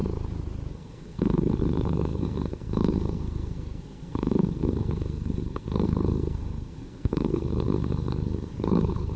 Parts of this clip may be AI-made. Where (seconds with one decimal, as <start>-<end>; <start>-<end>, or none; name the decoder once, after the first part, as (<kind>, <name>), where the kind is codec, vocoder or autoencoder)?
0.7-9.2 (codec, SNAC)